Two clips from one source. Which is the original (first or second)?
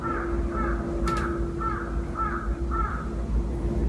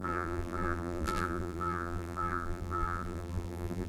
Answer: first